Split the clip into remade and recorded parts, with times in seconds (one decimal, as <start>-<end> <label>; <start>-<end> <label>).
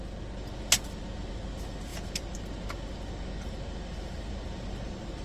0.0-5.2 recorded